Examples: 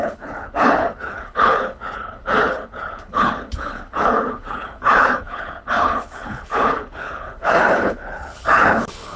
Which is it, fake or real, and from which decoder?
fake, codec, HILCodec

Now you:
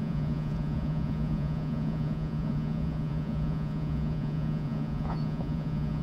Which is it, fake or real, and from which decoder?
fake, vocoder, Vocos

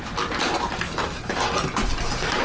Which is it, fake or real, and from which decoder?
real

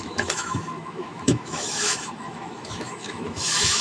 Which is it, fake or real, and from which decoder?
fake, autoencoder, DAC-VAE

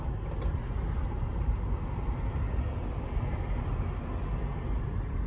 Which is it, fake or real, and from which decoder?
real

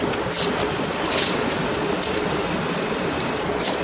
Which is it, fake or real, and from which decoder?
real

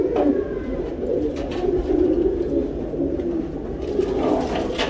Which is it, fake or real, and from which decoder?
real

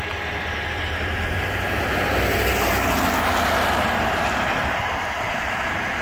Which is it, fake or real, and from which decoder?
real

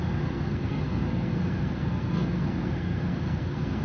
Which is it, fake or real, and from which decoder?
fake, codec, SNAC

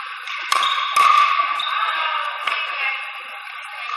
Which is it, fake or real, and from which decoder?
real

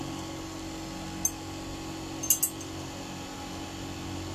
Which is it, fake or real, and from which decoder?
real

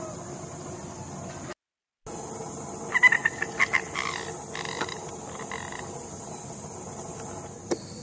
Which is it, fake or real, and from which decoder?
real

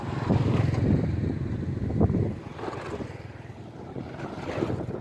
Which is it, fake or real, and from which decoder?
real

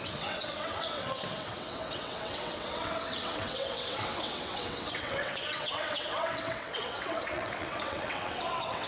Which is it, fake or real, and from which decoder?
fake, vocoder, WaveNeXt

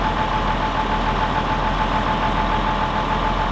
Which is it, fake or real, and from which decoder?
real